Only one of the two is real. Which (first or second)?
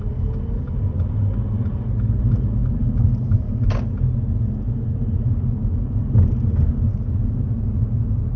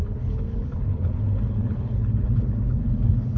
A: first